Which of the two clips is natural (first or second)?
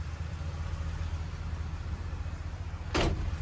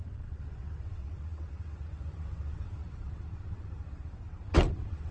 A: first